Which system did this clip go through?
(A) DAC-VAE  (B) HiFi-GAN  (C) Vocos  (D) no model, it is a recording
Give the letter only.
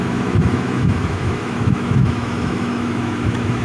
A